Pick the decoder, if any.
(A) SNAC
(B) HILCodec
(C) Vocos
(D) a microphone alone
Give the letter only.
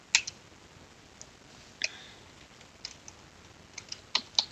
D